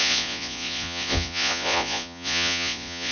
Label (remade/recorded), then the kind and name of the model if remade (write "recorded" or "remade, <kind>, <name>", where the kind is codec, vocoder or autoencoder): remade, vocoder, Vocos